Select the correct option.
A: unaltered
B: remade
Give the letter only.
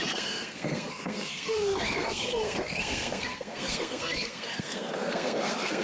B